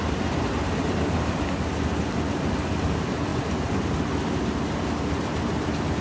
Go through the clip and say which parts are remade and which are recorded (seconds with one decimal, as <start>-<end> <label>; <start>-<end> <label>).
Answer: 0.0-6.0 recorded